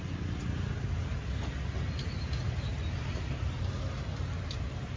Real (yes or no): yes